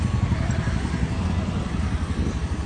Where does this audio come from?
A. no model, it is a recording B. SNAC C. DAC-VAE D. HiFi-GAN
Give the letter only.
A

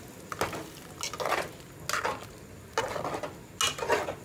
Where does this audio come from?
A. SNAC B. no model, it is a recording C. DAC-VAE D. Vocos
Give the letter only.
B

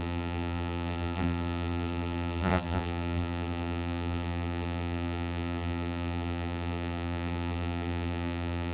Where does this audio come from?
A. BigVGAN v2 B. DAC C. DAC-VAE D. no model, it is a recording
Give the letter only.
A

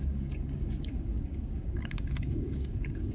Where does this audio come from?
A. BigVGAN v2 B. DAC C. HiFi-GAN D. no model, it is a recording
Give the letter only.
B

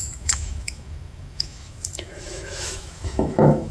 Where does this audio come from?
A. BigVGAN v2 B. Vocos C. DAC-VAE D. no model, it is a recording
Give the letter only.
C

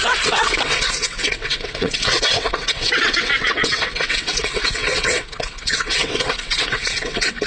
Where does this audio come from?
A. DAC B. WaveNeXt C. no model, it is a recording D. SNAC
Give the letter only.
B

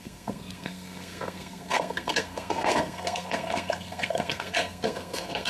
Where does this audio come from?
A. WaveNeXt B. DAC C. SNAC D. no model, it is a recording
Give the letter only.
C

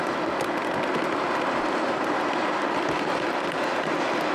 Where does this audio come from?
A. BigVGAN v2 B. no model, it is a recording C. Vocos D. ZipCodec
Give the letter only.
B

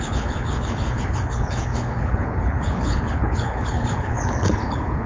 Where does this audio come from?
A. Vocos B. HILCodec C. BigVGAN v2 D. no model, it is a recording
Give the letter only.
B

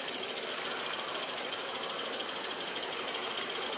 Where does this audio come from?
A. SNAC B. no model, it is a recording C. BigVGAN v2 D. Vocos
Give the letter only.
B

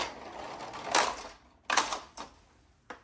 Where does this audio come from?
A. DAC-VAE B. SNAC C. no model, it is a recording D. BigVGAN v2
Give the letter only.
C